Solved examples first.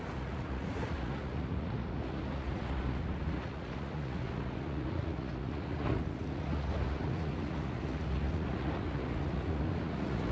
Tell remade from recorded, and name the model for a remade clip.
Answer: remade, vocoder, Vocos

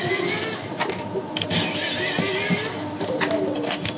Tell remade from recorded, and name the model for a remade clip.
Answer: recorded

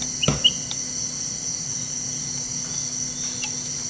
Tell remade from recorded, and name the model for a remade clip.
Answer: recorded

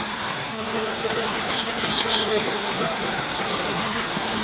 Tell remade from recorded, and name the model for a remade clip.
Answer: remade, codec, SNAC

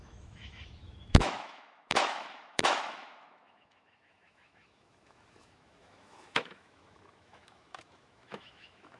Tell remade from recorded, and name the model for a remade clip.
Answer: remade, autoencoder, DAC-VAE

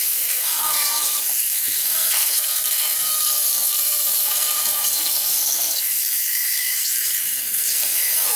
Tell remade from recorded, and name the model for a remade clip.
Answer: remade, codec, SNAC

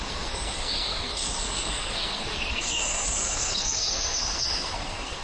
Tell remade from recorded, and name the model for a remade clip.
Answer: remade, codec, SNAC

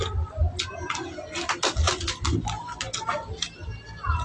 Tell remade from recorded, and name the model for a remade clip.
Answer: recorded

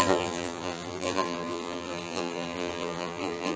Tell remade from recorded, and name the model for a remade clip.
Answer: remade, vocoder, BigVGAN v2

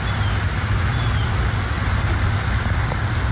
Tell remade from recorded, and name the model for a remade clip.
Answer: recorded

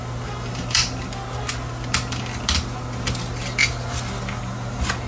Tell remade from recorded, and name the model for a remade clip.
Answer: recorded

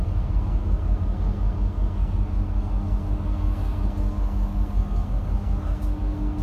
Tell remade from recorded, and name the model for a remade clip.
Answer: remade, codec, SNAC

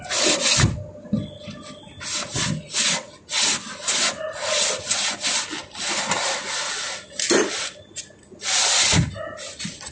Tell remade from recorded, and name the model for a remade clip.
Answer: recorded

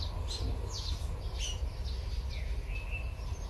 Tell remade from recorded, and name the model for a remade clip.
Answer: recorded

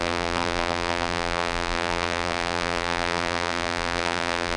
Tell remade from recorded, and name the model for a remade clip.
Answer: remade, vocoder, BigVGAN v2